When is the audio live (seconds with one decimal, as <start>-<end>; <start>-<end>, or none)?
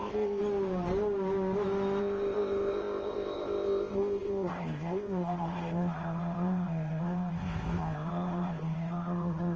0.4-2.0